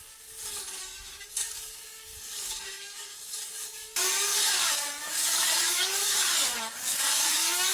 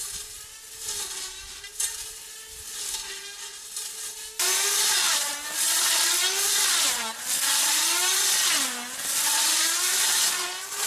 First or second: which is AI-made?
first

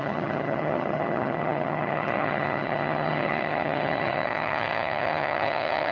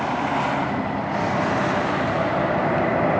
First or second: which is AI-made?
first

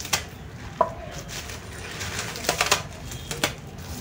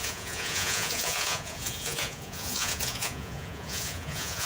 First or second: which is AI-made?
second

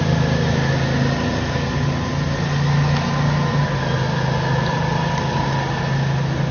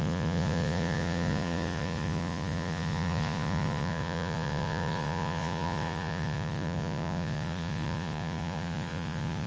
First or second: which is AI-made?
second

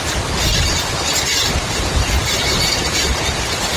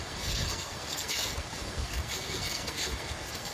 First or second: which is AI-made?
second